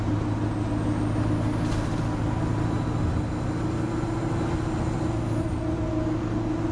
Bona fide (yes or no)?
yes